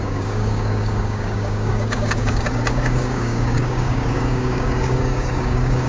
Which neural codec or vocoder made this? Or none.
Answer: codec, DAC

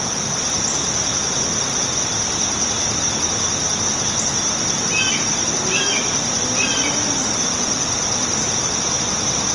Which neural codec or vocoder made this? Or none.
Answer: none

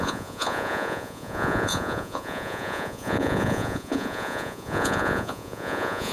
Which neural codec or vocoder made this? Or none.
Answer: vocoder, Vocos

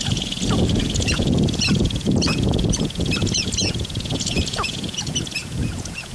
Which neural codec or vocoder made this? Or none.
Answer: vocoder, Vocos